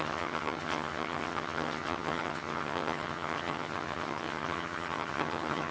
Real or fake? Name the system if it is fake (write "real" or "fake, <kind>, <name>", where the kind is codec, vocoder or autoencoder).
fake, vocoder, HiFi-GAN